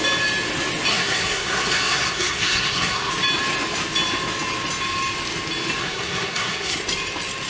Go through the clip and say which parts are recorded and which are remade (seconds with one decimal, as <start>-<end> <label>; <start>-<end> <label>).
0.0-0.9 recorded; 0.9-3.1 remade; 3.1-5.8 recorded; 5.8-6.8 remade; 6.8-7.5 recorded